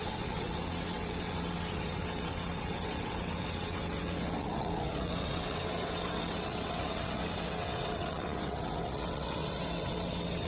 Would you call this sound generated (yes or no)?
yes